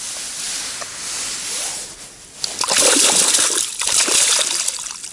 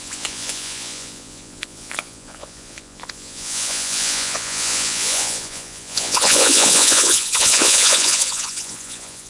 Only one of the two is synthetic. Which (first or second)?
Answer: second